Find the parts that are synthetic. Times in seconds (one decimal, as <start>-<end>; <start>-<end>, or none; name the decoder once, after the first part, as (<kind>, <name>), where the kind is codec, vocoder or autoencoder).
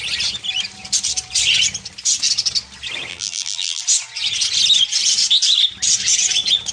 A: 3.1-3.8 (vocoder, BigVGAN v2)